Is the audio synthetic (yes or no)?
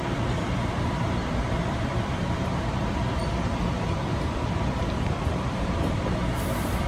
yes